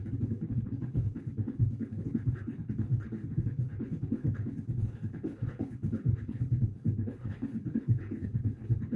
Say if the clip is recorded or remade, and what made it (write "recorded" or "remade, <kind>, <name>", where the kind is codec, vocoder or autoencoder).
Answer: remade, codec, HILCodec